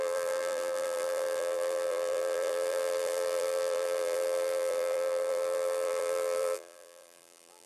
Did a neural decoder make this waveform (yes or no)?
yes